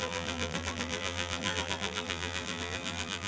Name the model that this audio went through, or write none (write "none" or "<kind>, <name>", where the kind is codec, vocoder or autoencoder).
vocoder, BigVGAN v2